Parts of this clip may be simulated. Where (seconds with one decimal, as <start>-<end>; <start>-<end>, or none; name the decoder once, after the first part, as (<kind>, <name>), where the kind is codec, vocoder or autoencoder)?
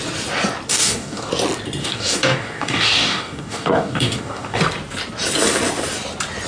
0.7-1.3 (codec, DAC); 1.8-4.6